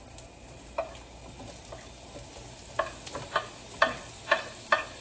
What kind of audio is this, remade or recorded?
recorded